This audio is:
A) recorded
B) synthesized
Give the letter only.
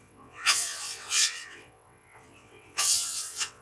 B